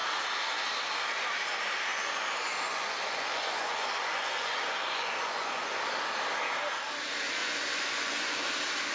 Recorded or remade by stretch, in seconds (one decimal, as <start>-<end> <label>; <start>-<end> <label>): 0.0-1.9 recorded; 1.9-5.8 remade; 5.8-7.4 recorded; 7.4-8.5 remade; 8.5-8.9 recorded